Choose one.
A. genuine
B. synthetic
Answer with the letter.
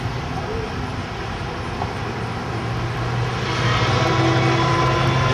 A